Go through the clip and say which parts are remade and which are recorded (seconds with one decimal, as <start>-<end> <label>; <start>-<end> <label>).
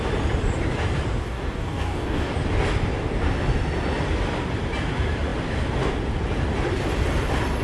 0.0-1.2 recorded; 1.2-2.3 remade; 2.3-7.6 recorded